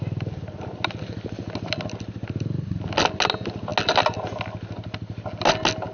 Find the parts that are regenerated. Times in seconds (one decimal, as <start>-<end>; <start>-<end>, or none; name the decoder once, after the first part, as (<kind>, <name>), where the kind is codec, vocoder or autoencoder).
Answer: none